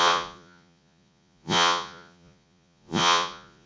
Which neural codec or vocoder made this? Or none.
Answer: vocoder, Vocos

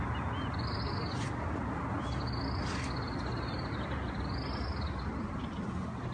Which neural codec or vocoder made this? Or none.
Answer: none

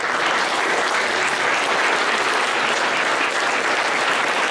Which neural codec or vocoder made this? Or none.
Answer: none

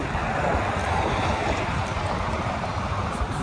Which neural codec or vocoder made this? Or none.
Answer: none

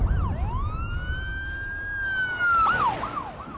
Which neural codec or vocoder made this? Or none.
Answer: none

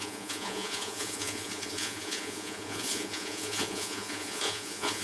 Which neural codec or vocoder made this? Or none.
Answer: vocoder, Vocos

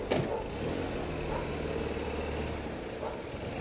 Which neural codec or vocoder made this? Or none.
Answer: none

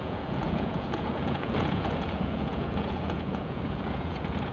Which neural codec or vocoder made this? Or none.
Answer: vocoder, Vocos